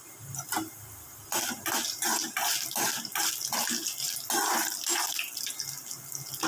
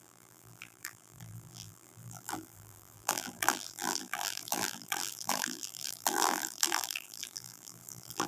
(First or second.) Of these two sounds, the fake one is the second